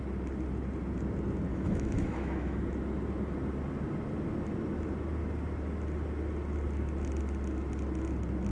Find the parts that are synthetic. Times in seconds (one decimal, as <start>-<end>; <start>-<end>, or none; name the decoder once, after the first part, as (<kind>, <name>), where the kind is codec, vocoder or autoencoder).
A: 1.5-2.6 (autoencoder, DAC-VAE)